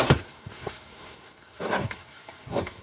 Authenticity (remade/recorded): remade